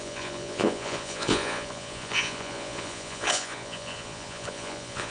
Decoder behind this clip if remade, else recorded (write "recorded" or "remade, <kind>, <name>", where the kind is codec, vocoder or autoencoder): remade, vocoder, Vocos